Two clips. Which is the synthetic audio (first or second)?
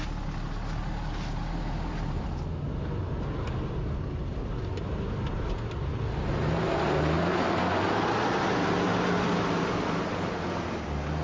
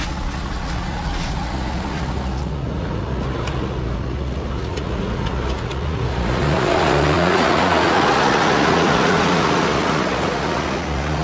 second